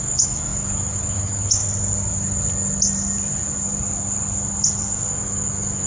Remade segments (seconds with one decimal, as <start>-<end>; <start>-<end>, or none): 0.0-1.6; 5.1-5.9